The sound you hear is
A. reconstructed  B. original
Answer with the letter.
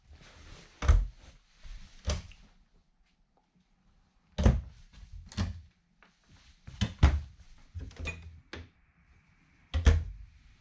B